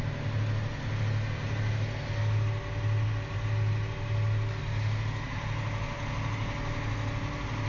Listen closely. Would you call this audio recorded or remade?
recorded